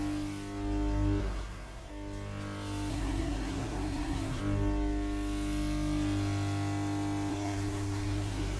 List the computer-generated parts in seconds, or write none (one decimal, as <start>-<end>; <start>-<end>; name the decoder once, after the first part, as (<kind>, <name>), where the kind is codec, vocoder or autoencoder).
1.2-1.9 (codec, SNAC); 2.9-4.4; 7.3-8.6